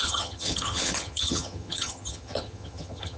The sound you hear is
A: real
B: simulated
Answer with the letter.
B